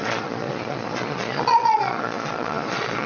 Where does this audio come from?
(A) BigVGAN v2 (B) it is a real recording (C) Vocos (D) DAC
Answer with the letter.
C